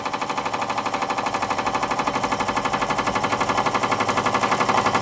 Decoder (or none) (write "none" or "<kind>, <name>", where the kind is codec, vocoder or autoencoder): none